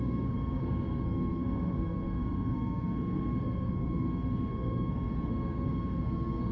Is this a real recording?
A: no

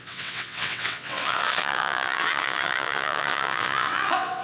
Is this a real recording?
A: no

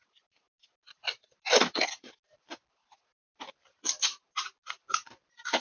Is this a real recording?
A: yes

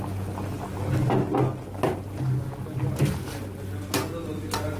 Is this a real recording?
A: yes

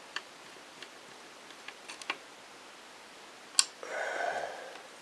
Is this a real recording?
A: yes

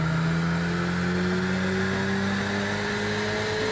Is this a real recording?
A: yes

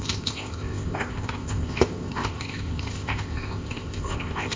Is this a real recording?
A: no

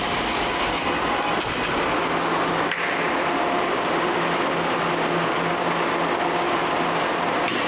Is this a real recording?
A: yes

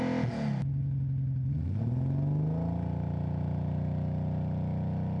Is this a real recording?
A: yes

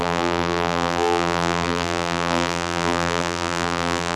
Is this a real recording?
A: no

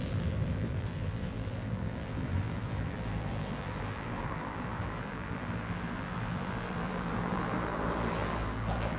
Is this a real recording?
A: no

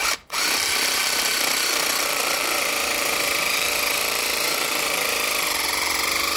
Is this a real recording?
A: no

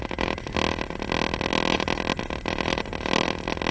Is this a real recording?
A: yes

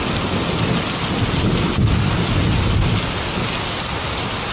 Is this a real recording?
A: yes